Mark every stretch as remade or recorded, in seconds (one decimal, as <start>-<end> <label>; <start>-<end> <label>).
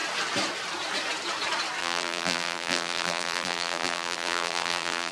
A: 0.0-1.8 recorded; 1.8-5.1 remade